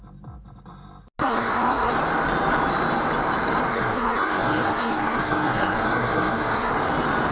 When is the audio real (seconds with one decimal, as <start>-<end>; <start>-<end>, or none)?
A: 0.0-1.2; 1.9-3.7; 6.7-7.3